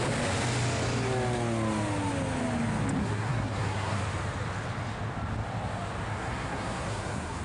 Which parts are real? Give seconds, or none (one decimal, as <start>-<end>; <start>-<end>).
0.0-3.0; 4.0-6.1

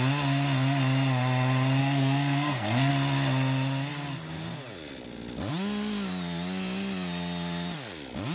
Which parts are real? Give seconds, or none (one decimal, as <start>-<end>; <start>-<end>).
0.0-1.8; 2.9-8.3